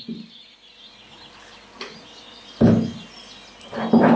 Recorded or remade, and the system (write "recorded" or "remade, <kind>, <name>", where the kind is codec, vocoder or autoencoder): recorded